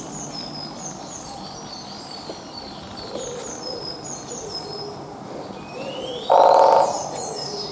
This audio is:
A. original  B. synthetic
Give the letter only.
A